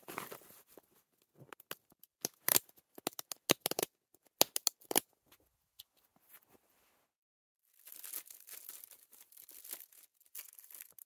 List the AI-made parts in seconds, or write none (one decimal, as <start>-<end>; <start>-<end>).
none